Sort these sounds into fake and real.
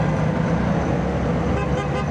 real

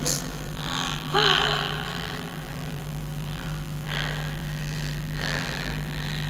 fake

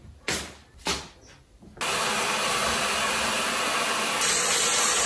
real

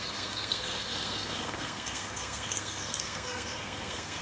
fake